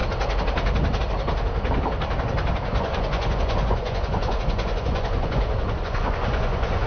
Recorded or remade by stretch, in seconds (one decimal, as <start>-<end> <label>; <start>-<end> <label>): 0.0-2.7 recorded; 2.7-6.9 remade